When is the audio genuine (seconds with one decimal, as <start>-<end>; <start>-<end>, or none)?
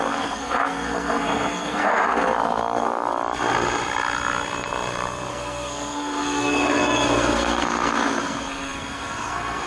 3.1-5.3